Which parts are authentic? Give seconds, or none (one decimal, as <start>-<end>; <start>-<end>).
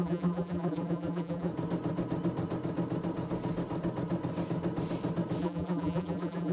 1.5-5.4